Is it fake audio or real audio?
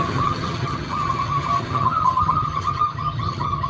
fake